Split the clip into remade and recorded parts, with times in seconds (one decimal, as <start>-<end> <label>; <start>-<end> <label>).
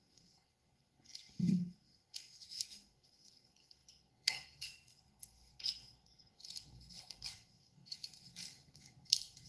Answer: 0.0-9.5 remade